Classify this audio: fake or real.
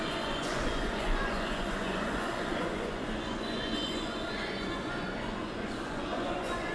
fake